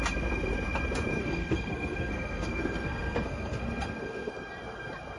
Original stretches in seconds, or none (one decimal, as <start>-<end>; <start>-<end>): 0.0-1.2; 4.3-5.2